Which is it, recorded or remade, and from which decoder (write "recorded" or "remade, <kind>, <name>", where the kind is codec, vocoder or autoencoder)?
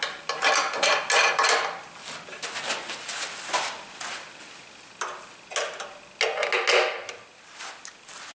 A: recorded